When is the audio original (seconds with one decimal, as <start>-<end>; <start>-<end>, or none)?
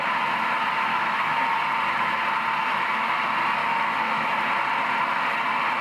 0.0-0.9; 1.4-2.6; 3.1-3.6; 4.4-5.8